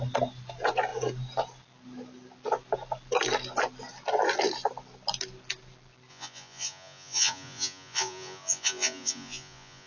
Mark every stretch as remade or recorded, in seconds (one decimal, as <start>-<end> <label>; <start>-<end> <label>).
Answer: 0.0-6.1 recorded; 6.1-9.9 remade